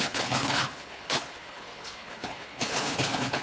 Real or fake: fake